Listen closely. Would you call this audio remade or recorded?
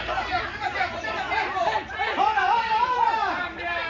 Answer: remade